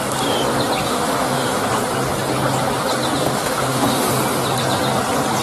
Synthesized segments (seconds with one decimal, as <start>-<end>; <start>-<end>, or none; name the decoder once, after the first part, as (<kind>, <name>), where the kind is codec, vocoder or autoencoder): 0.8-1.6 (autoencoder, DAC-VAE); 3.2-4.1

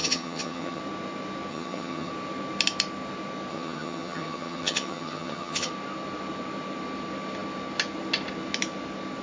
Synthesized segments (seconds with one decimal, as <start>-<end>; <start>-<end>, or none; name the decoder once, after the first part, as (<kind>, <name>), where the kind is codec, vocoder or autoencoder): 0.0-0.8 (vocoder, HiFi-GAN); 1.5-2.1; 3.5-5.7

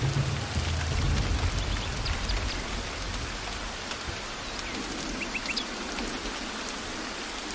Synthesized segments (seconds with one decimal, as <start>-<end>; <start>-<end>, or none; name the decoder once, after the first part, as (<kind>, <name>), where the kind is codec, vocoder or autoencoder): none